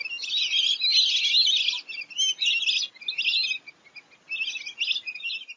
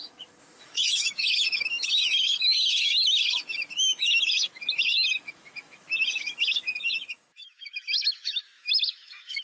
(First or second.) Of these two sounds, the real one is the first